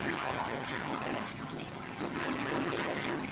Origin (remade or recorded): remade